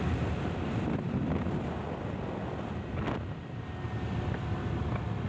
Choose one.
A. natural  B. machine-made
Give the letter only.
A